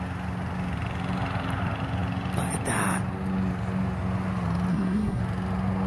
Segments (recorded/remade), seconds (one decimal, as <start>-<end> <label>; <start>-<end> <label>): 0.0-4.7 recorded; 4.7-5.2 remade; 5.2-5.9 recorded